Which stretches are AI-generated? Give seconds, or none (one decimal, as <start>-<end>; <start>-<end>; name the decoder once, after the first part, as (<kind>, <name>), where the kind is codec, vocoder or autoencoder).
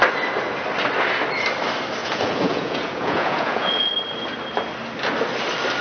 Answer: 2.0-3.9 (vocoder, Vocos)